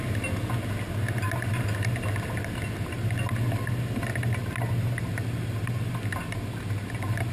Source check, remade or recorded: recorded